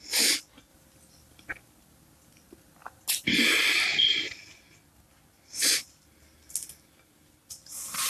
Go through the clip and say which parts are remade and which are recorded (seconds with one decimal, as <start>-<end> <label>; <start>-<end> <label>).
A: 0.0-8.1 recorded